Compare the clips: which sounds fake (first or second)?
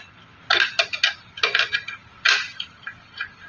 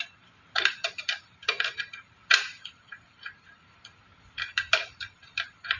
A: second